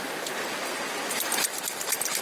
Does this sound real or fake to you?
real